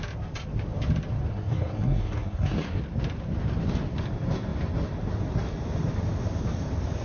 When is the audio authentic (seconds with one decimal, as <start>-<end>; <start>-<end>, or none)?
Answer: 0.0-1.3; 2.8-7.0